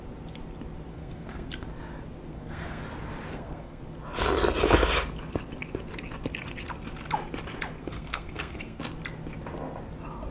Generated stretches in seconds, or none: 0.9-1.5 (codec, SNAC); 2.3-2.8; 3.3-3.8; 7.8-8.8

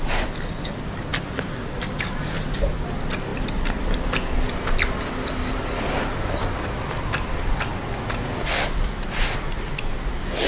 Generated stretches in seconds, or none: 3.3-5.9 (vocoder, BigVGAN v2)